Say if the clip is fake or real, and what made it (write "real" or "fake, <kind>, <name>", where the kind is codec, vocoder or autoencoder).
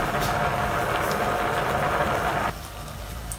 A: real